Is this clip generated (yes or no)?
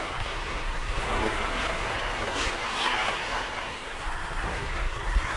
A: yes